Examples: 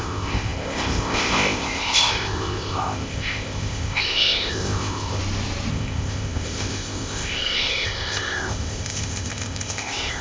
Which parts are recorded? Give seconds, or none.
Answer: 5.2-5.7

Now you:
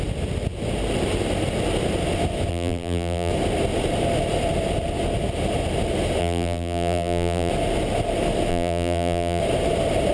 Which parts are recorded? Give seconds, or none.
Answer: 0.0-2.5; 3.3-6.2; 7.5-8.5; 9.4-10.1

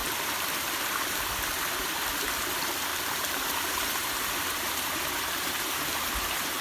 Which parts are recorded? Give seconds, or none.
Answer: 0.0-2.9

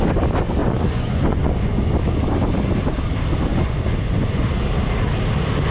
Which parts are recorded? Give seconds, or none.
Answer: 0.0-0.6; 1.9-3.5; 4.4-5.7

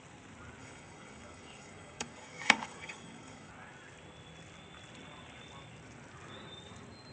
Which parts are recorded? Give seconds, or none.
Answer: 0.0-0.6; 3.5-7.1

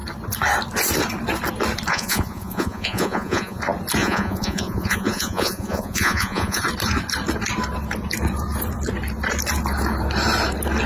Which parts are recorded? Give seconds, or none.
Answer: 0.0-1.9; 3.6-4.0; 6.6-10.9

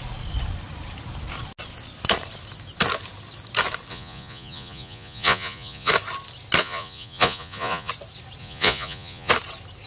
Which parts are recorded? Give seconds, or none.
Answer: 0.0-3.9; 5.9-6.6; 7.9-8.4; 9.3-9.9

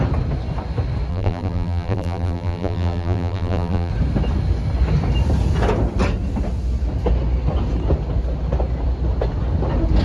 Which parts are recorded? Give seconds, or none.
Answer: 0.0-1.1; 3.9-10.0